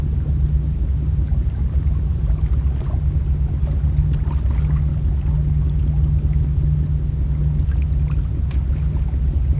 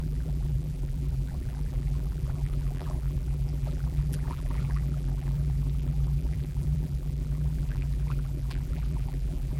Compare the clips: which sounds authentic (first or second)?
first